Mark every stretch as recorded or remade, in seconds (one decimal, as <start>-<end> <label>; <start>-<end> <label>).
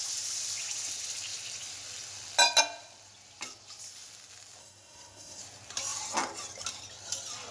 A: 0.0-4.6 recorded; 4.6-5.4 remade; 5.4-7.5 recorded